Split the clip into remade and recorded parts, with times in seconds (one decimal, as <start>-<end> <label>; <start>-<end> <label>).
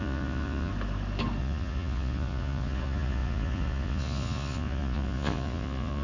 0.0-0.7 remade; 0.7-1.4 recorded; 1.4-6.0 remade